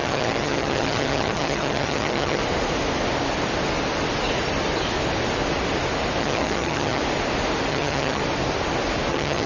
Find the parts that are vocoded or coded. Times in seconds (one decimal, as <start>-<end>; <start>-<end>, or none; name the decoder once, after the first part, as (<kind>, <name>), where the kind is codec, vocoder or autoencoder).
0.0-2.4 (vocoder, HiFi-GAN); 6.2-7.0; 7.7-8.2; 9.1-9.5

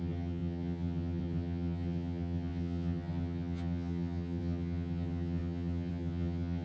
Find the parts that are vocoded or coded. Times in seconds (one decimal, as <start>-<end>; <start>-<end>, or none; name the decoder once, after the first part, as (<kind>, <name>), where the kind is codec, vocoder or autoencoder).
0.0-6.6 (vocoder, HiFi-GAN)

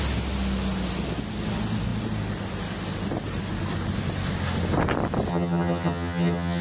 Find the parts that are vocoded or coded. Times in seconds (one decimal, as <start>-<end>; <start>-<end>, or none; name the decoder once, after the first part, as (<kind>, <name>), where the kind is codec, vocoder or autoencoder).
5.3-6.6 (vocoder, HiFi-GAN)

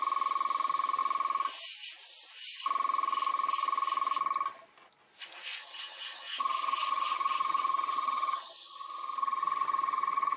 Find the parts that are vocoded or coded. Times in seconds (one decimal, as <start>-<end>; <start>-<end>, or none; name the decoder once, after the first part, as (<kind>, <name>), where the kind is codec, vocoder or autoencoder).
5.6-10.4 (vocoder, HiFi-GAN)

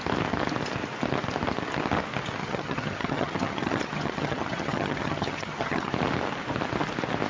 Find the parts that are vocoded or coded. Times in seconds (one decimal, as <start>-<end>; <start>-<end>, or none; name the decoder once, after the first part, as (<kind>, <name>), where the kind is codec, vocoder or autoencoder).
2.4-5.9 (vocoder, HiFi-GAN)

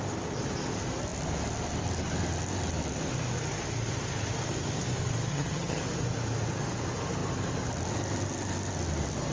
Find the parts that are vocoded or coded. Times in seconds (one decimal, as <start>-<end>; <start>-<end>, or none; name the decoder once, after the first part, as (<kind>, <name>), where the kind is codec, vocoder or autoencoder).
5.3-5.8 (vocoder, HiFi-GAN)

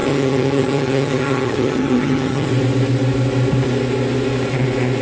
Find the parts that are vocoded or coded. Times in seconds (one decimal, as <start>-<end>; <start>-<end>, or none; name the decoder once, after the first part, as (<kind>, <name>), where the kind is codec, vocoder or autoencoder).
0.0-2.5 (vocoder, HiFi-GAN)